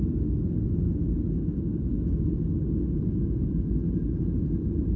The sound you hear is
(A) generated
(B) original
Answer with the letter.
B